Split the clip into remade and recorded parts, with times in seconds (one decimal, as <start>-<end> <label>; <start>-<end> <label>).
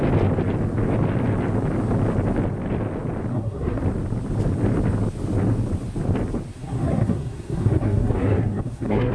0.0-3.3 recorded; 3.3-3.8 remade; 3.8-6.5 recorded; 6.5-9.1 remade